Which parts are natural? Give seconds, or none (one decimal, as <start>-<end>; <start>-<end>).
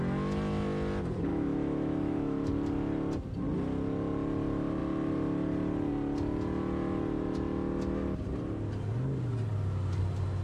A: 0.0-1.3; 2.5-10.4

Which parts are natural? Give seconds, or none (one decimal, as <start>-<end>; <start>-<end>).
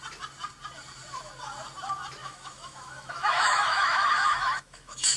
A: 0.0-2.2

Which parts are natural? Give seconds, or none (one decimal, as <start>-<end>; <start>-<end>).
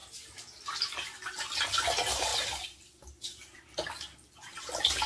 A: 0.0-5.1